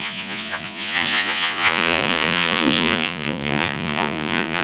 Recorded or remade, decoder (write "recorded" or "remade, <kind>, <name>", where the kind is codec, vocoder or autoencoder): remade, vocoder, Vocos